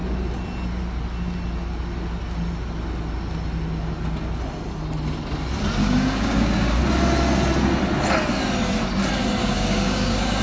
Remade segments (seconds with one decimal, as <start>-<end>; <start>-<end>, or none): 5.8-6.8; 9.4-10.4